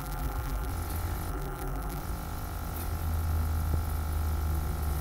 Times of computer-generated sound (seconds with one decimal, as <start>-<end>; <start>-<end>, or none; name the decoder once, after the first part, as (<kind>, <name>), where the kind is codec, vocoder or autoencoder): 0.0-0.7 (vocoder, BigVGAN v2); 1.3-2.0